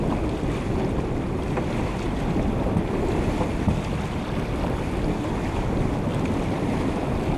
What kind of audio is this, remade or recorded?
recorded